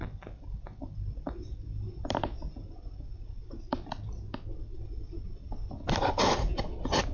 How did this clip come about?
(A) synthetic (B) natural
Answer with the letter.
B